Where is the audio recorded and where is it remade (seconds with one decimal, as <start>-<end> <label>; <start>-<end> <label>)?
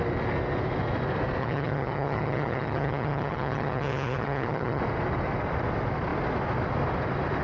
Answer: 0.0-1.4 recorded; 1.4-4.8 remade; 4.8-7.4 recorded